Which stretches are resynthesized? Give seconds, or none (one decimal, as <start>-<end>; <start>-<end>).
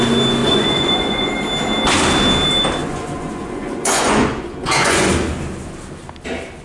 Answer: 0.4-1.3; 2.8-5.1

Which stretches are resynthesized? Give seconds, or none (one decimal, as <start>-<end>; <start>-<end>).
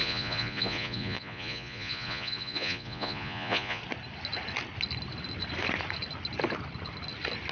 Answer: 0.0-3.8